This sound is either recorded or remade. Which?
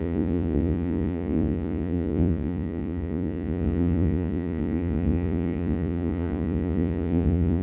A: remade